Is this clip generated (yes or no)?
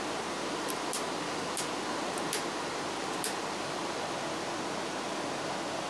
no